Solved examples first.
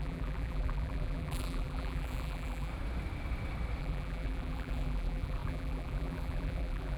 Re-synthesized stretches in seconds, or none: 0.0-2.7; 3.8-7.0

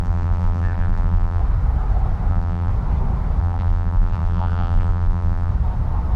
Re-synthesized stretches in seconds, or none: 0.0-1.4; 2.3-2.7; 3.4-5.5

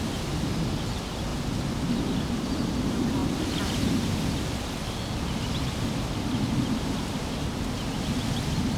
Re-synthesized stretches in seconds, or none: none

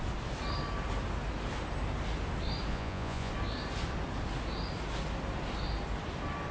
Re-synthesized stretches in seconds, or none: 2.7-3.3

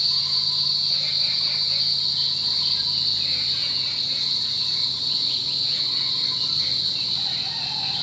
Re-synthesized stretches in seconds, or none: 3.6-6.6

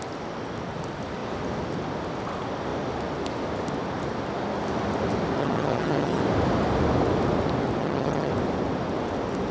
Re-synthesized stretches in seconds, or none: 5.4-6.2; 7.8-8.3

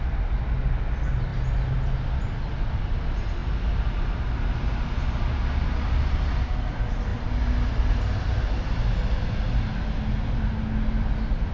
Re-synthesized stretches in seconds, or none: none

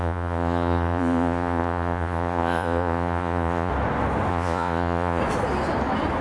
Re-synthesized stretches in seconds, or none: 0.0-3.7; 4.3-5.2